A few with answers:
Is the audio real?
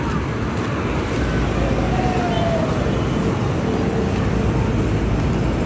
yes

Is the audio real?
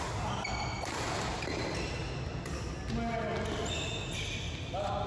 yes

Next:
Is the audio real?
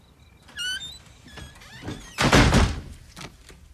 yes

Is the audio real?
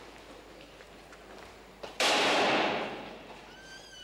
yes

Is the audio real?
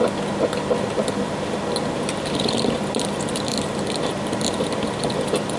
yes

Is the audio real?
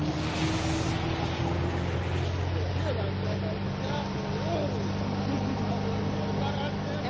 yes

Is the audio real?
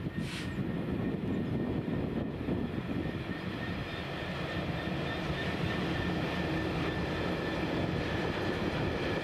yes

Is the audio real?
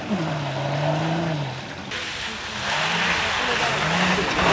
yes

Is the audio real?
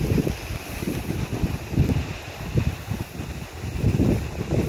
yes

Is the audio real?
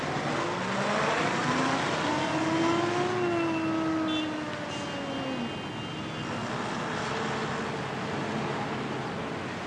yes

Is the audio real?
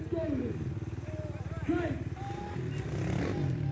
yes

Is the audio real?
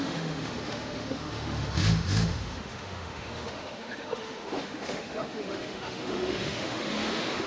no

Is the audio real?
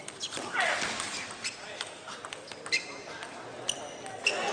yes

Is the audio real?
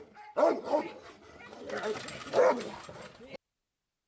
yes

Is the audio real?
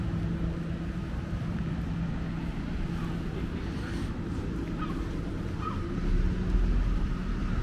yes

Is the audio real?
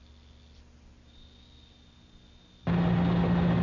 yes